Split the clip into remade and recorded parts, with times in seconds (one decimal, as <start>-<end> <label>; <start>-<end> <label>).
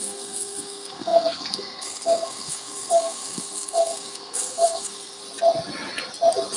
0.0-5.2 remade; 5.2-6.6 recorded